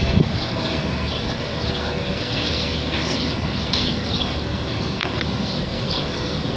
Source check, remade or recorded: remade